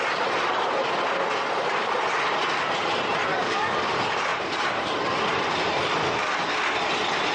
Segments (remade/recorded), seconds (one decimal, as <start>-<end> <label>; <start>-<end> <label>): 0.0-3.3 recorded; 3.3-3.9 remade; 3.9-6.0 recorded; 6.0-6.5 remade; 6.5-7.3 recorded